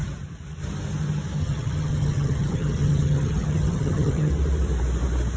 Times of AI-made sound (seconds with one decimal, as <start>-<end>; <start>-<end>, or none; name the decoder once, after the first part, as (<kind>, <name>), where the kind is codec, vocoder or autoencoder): 1.4-4.3 (vocoder, HiFi-GAN)